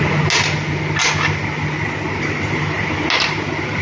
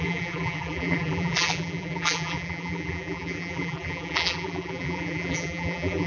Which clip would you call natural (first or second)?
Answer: first